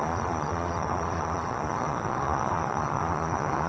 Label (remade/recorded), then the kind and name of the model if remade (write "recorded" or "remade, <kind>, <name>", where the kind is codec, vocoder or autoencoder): remade, vocoder, Vocos